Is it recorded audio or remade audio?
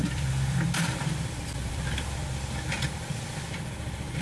remade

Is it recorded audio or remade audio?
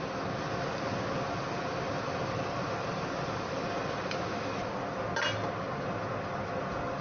recorded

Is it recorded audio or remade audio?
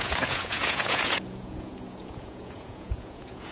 remade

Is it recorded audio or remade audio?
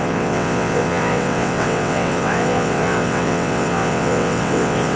remade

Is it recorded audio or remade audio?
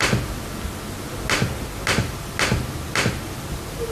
recorded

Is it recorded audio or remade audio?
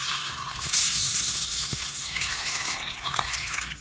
remade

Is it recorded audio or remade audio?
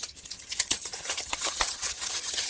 remade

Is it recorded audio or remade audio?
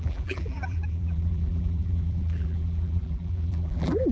remade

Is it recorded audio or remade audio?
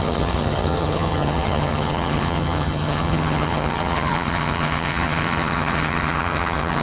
remade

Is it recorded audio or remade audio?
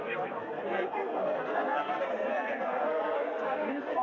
remade